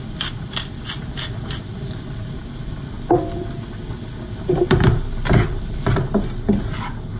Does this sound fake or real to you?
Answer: real